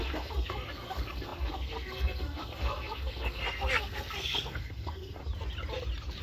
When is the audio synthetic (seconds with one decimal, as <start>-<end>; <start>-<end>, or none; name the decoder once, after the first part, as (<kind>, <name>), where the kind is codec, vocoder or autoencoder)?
0.0-5.2 (codec, SNAC)